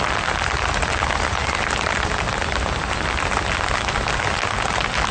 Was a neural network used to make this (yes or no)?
no